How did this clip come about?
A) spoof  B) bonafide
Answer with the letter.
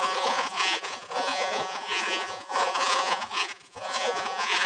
A